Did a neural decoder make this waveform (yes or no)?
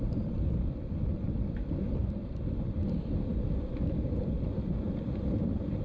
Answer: no